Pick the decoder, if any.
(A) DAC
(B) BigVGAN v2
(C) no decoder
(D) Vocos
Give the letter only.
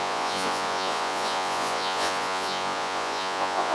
D